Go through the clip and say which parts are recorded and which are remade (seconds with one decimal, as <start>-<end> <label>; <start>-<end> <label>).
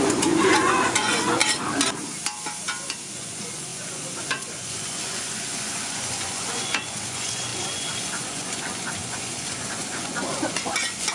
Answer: 0.0-1.4 remade; 1.4-3.1 recorded; 3.1-11.1 remade